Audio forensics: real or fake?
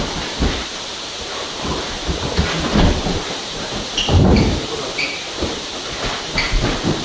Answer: fake